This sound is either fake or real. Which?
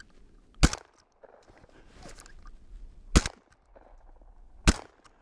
real